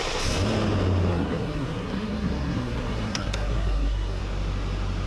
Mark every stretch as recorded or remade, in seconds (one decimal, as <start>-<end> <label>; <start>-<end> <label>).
0.0-1.1 recorded; 1.1-4.2 remade; 4.2-5.1 recorded